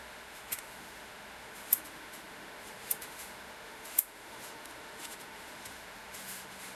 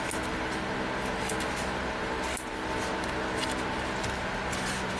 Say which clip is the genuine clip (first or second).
second